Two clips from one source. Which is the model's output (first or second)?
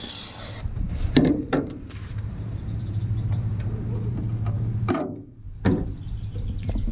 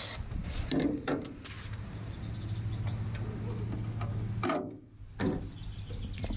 first